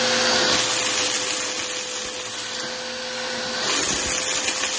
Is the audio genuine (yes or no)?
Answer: yes